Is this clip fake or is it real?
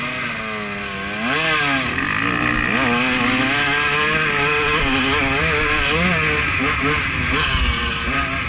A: real